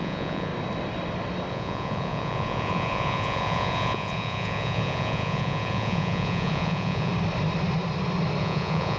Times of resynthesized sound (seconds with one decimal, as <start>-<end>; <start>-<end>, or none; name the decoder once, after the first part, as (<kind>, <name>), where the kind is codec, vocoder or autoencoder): 0.0-0.5 (vocoder, Vocos); 1.5-7.1; 8.4-9.0